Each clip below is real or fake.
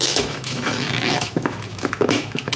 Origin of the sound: fake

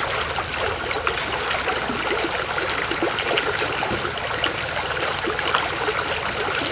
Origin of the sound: real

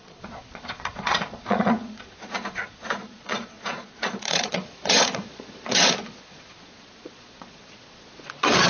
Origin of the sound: fake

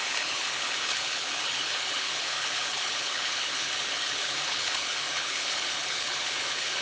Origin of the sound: fake